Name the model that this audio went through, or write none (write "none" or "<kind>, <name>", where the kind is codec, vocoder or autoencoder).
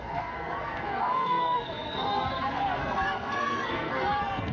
codec, SNAC